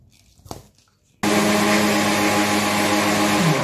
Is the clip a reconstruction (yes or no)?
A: no